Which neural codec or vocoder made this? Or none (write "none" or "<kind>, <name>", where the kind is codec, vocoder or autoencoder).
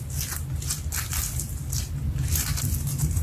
none